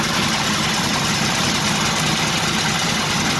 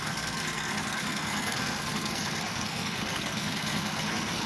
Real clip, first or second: first